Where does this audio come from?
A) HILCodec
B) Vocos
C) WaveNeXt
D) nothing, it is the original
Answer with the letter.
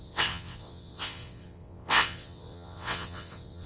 C